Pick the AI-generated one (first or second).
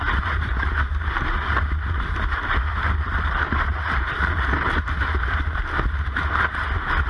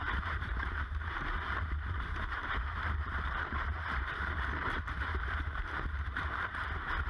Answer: second